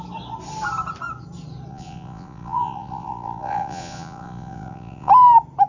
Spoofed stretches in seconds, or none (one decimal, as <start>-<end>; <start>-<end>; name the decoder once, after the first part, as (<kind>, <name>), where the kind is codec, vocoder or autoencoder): 1.7-5.1 (vocoder, Vocos)